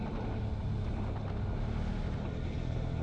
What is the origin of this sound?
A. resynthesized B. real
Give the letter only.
B